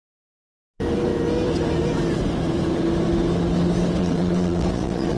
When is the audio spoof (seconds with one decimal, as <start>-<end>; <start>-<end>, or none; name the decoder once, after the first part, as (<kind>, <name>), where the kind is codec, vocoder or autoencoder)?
4.0-5.2 (vocoder, WaveNeXt)